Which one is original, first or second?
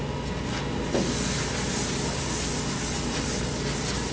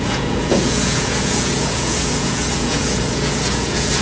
first